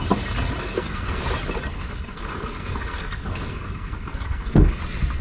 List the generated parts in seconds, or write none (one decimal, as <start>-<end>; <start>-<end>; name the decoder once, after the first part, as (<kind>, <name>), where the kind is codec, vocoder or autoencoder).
0.6-1.2 (codec, SNAC); 1.7-4.8